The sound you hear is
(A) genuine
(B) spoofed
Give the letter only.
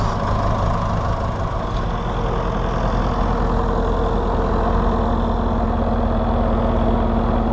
A